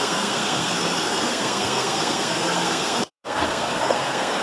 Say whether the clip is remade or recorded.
remade